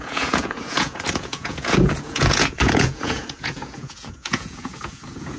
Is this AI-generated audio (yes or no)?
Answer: yes